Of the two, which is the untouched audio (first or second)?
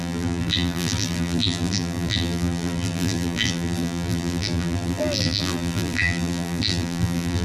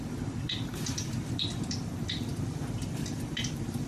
second